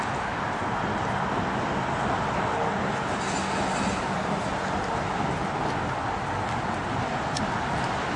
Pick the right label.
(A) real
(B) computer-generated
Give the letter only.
A